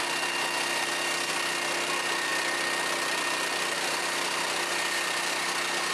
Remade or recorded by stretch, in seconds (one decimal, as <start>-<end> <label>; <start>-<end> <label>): 0.0-5.9 recorded